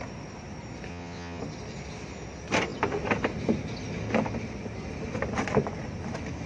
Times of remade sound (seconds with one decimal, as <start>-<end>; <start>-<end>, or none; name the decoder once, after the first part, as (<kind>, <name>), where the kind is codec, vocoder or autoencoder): 0.9-1.4 (vocoder, WaveNeXt)